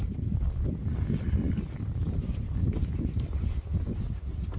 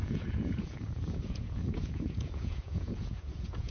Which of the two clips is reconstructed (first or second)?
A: second